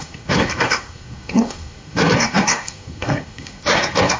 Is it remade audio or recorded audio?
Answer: remade